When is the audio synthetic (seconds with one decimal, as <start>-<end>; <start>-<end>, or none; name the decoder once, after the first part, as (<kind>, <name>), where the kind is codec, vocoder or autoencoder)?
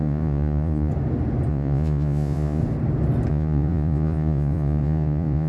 0.0-0.9 (vocoder, Vocos); 1.5-2.6; 3.3-5.5